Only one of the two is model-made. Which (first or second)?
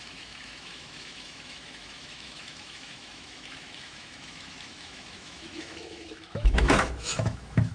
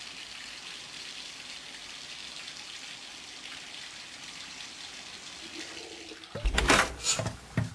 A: first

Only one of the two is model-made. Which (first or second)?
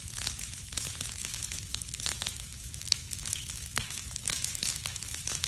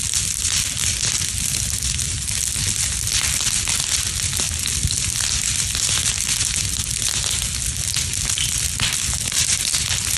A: first